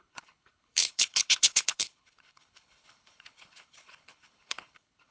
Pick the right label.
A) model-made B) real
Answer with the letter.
A